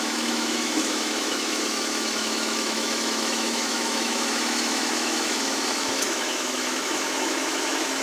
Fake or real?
fake